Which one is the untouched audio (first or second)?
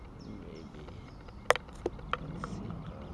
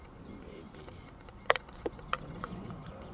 first